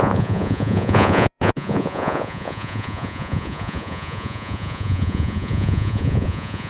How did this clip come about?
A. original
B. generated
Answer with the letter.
B